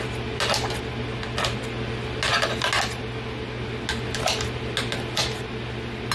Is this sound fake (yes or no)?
no